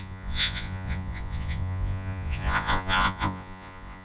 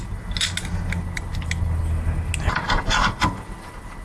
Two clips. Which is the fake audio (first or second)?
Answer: first